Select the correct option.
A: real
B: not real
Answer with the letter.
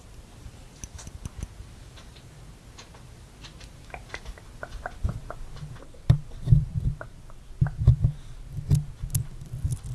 A